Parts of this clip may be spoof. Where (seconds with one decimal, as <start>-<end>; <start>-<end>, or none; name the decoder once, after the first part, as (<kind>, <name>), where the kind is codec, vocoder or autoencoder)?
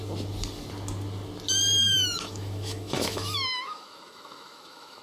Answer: 1.8-5.0 (autoencoder, DAC-VAE)